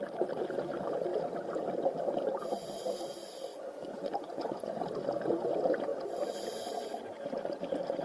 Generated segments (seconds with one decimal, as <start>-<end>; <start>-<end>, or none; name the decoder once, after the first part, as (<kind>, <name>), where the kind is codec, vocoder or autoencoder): 3.5-4.8 (vocoder, Vocos)